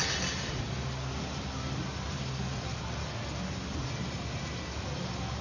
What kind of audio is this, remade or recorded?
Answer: recorded